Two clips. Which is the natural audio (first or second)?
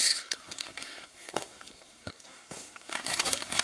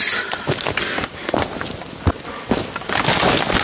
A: second